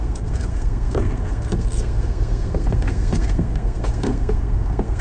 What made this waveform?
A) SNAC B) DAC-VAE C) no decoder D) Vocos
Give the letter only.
A